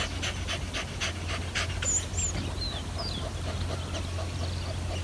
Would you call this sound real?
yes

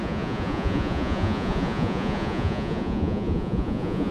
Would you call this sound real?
no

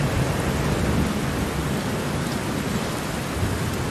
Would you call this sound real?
yes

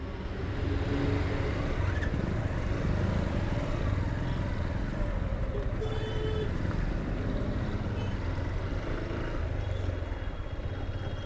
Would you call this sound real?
yes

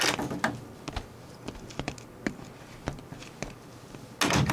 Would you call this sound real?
yes